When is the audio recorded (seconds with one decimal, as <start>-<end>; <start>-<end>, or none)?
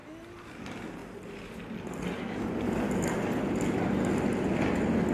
0.0-5.1